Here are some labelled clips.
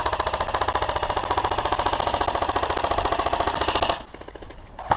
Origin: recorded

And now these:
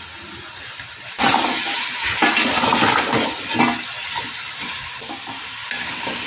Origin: recorded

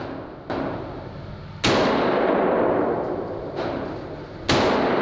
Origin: recorded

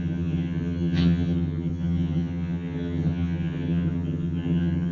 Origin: remade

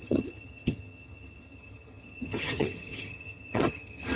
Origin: remade